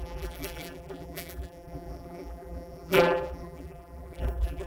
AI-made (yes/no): yes